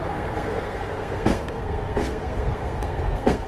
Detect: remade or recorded remade